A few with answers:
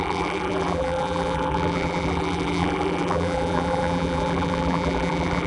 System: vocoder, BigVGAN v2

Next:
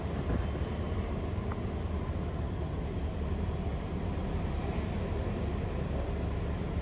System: none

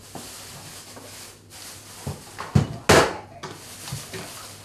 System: none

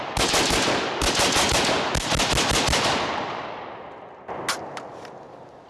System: none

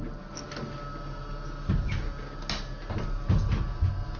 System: none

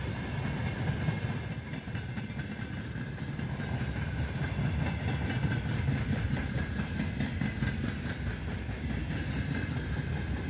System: none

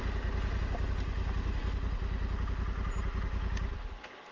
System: none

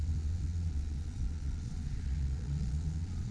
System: vocoder, Vocos